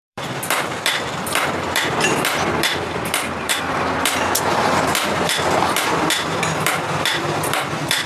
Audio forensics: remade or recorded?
remade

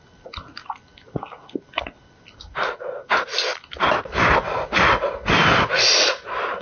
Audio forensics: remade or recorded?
recorded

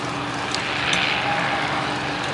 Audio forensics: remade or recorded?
recorded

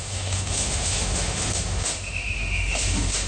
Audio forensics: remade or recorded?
remade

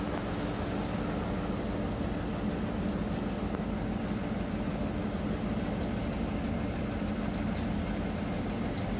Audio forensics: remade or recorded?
recorded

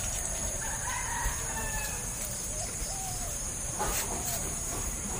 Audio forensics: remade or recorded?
remade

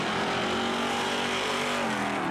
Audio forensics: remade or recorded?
recorded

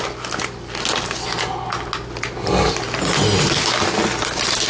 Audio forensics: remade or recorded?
recorded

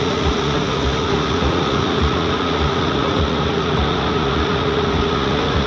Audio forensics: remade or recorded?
remade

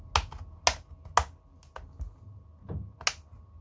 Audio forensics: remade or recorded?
recorded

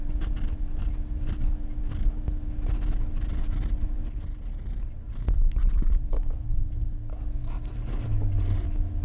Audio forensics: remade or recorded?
recorded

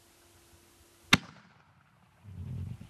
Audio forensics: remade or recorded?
recorded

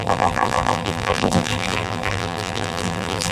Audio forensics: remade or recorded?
remade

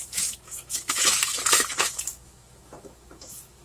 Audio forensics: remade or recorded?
remade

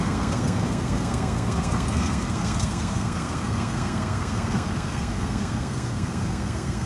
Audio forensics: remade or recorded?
remade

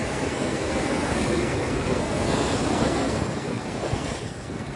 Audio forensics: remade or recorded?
remade